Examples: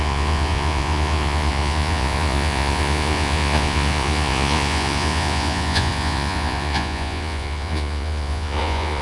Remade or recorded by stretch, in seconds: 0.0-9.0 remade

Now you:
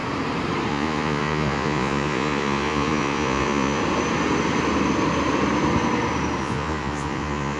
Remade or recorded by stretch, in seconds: 0.0-0.7 recorded; 0.7-3.8 remade; 3.8-6.4 recorded; 6.4-7.6 remade

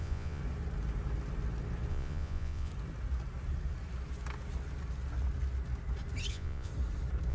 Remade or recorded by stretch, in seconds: 0.0-0.4 remade; 0.4-1.9 recorded; 1.9-2.7 remade; 2.7-6.3 recorded; 6.3-6.7 remade; 6.7-7.3 recorded

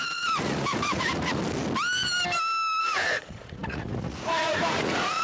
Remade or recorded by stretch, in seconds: 0.0-1.4 remade; 1.4-2.8 recorded; 2.8-5.2 remade

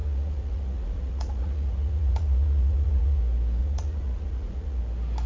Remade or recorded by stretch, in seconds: 0.0-3.2 remade; 3.2-3.6 recorded; 3.6-4.8 remade; 4.8-5.3 recorded

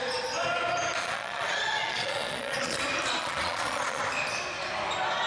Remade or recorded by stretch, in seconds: 0.0-1.0 recorded; 1.0-2.8 remade; 2.8-3.2 recorded; 3.2-4.0 remade; 4.0-5.3 recorded